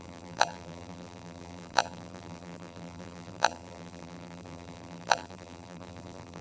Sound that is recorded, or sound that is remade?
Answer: remade